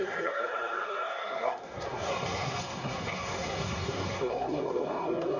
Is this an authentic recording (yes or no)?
no